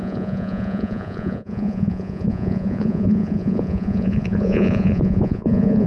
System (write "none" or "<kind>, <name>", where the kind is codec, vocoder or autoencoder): vocoder, Vocos